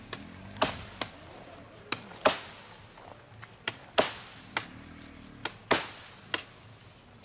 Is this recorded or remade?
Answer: recorded